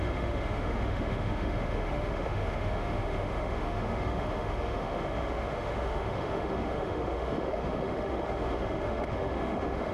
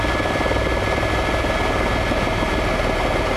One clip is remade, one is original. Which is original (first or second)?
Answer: second